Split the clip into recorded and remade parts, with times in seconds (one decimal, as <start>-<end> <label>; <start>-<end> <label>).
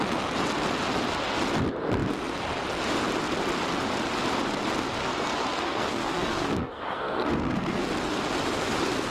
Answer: 0.0-5.0 recorded; 5.0-7.9 remade; 7.9-9.1 recorded